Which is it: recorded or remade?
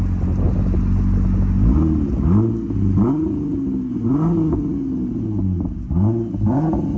recorded